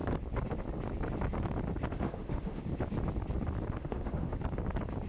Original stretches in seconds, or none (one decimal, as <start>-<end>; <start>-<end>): 0.0-1.9; 2.6-3.8; 4.4-5.1